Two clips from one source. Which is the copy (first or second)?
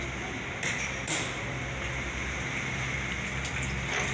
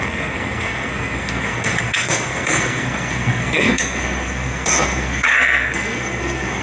second